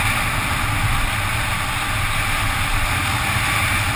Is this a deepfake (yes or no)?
no